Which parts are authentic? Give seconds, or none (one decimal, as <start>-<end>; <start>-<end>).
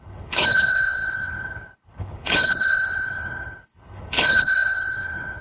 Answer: none